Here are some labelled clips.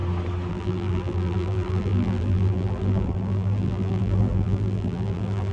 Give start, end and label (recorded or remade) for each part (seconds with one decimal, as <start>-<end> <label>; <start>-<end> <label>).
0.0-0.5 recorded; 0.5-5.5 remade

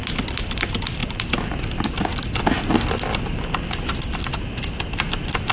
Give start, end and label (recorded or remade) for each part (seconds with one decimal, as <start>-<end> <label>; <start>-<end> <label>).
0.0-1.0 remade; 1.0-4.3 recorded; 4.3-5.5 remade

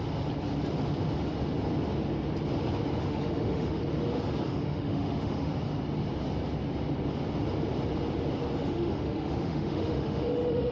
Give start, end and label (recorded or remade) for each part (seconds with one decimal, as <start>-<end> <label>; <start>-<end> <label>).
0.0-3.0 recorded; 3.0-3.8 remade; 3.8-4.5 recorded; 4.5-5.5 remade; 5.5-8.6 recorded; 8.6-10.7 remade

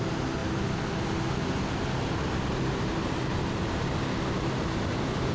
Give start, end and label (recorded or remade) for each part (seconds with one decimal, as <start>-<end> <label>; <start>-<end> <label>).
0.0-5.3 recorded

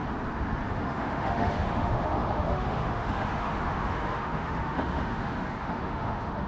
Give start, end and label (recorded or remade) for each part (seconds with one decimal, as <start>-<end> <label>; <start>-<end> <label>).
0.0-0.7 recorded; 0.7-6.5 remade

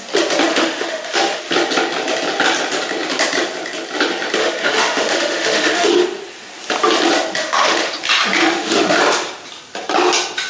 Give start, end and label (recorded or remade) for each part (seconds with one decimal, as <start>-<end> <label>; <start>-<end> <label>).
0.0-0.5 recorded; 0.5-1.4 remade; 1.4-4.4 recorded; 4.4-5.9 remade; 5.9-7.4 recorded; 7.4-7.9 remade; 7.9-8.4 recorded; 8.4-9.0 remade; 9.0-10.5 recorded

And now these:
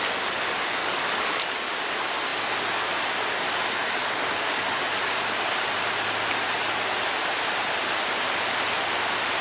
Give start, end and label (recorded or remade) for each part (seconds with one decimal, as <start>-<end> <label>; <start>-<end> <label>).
0.0-0.8 recorded; 0.8-1.9 remade; 1.9-4.0 recorded; 4.0-4.8 remade; 4.8-9.4 recorded

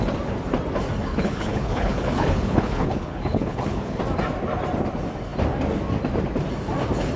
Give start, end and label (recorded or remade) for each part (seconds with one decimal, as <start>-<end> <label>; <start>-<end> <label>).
0.0-1.1 recorded; 1.1-4.0 remade; 4.0-7.2 recorded